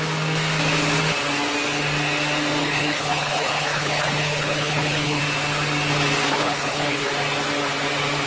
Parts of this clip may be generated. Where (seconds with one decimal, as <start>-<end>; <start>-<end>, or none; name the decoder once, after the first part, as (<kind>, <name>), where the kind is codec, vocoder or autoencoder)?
2.6-5.2 (codec, HILCodec); 6.3-7.1